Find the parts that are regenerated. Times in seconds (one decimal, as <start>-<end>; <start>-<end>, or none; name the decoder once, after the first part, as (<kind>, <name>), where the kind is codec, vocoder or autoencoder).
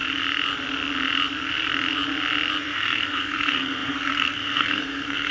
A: 2.6-5.3 (codec, SNAC)